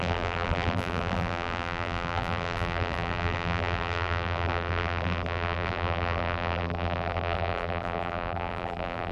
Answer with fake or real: fake